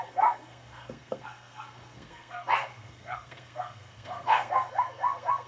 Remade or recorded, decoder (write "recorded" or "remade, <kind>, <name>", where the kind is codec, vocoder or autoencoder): remade, codec, SNAC